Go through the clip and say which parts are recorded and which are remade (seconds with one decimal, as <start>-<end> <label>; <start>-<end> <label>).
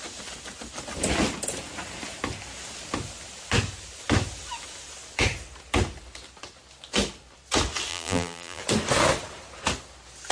0.0-7.9 recorded; 7.9-8.6 remade; 8.6-10.3 recorded